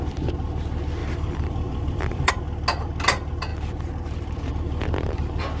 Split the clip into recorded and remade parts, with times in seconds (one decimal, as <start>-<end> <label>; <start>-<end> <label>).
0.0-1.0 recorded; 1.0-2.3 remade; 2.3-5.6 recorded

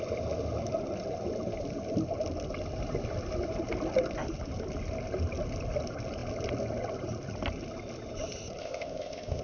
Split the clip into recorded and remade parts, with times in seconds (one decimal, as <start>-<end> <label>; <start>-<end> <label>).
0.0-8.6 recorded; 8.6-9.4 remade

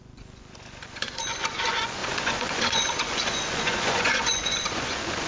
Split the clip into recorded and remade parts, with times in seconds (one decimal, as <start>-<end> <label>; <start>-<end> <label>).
0.0-5.3 remade